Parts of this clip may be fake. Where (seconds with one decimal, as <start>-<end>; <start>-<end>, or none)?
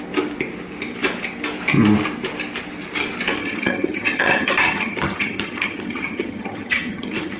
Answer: 3.4-7.4